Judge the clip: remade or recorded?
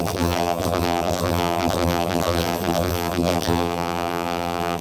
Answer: remade